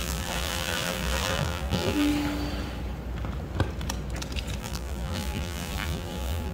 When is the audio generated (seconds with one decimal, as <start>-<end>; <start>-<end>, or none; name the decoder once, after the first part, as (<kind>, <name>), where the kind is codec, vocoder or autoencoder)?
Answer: 0.0-2.1 (vocoder, BigVGAN v2); 4.6-6.5